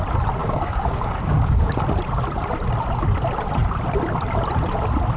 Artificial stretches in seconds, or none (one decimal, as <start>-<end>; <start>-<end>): 0.4-1.7

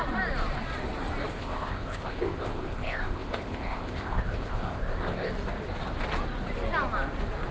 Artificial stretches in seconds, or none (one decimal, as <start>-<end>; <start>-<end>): 1.3-5.3